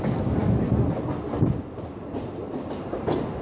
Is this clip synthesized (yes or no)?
no